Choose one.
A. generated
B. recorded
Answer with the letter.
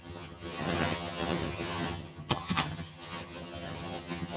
A